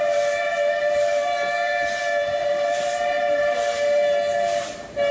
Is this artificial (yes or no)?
no